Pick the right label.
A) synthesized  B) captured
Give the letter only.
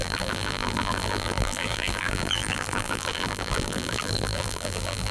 A